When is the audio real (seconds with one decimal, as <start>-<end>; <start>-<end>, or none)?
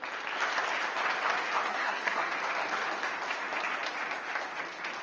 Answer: 0.0-1.7; 2.4-5.0